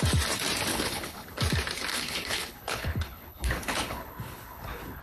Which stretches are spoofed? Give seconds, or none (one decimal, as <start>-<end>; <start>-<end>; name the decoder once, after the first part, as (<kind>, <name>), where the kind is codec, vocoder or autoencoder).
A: 0.7-1.4 (codec, HILCodec); 1.9-5.0